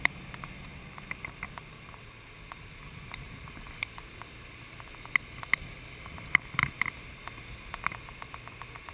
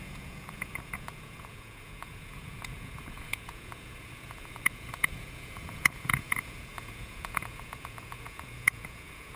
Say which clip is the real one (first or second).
first